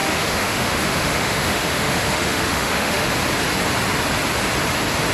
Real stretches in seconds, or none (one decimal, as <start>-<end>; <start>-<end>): 3.1-5.1